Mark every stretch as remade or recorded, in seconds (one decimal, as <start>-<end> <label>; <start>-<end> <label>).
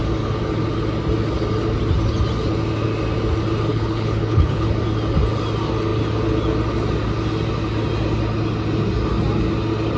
0.0-3.7 recorded; 3.7-4.7 remade; 4.7-10.0 recorded